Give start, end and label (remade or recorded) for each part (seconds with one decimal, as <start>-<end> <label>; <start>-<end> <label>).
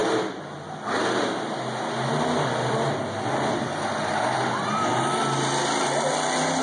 0.0-6.6 recorded